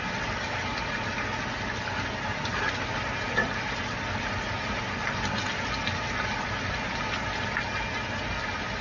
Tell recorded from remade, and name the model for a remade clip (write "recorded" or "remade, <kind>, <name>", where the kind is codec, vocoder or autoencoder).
recorded